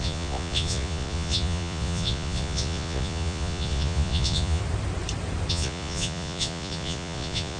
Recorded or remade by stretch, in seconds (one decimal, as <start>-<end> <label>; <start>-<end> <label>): 0.0-4.6 remade; 4.6-5.5 recorded; 5.5-7.6 remade